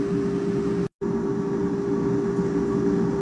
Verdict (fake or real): real